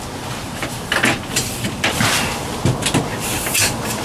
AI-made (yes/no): no